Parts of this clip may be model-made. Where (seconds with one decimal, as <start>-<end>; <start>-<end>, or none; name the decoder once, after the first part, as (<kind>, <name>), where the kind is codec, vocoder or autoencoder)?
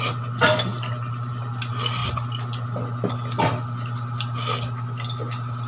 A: none